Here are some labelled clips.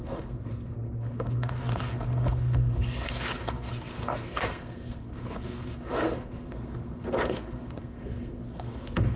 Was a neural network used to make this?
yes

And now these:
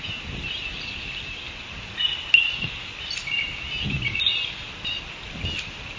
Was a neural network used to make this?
no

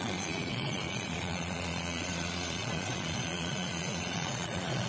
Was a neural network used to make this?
yes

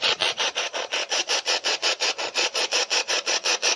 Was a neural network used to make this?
yes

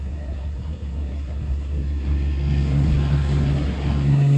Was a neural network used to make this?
yes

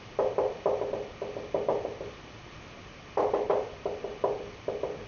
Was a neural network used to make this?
no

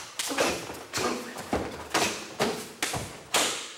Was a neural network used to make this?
no